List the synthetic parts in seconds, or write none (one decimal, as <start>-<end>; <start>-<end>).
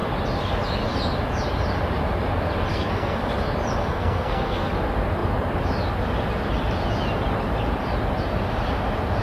2.7-3.2; 3.8-4.7